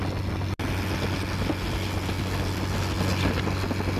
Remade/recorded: recorded